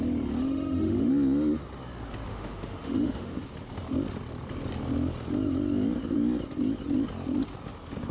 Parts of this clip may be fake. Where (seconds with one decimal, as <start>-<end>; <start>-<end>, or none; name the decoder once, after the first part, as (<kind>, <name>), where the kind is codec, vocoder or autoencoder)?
0.4-1.1 (autoencoder, DAC-VAE); 2.3-3.4